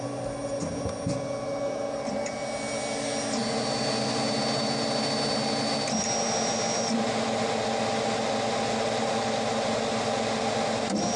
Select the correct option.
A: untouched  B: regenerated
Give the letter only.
A